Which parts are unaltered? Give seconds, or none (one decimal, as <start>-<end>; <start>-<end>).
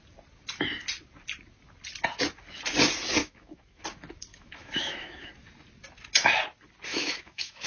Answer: 0.0-3.2; 3.8-4.3; 5.3-6.9